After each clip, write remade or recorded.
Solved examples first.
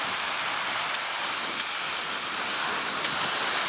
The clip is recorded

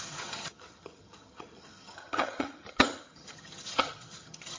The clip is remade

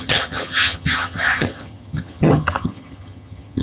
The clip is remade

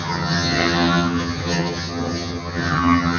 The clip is remade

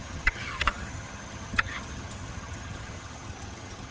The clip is remade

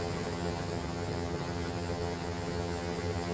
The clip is remade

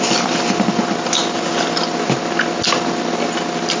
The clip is recorded